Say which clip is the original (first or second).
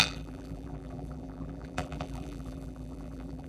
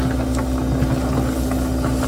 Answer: second